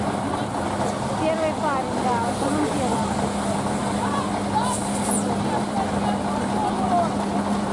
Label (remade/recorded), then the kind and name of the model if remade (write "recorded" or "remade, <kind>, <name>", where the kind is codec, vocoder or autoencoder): recorded